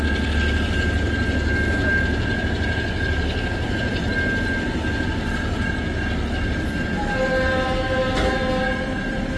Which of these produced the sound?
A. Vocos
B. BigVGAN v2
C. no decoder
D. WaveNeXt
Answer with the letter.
C